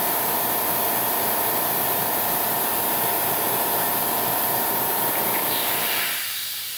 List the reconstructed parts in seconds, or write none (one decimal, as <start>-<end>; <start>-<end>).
1.8-5.9